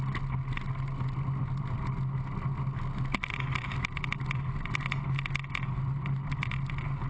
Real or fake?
real